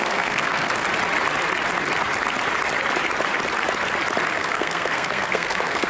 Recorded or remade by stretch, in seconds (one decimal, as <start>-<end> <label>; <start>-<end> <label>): 0.0-0.8 remade; 0.8-4.3 recorded; 4.3-5.9 remade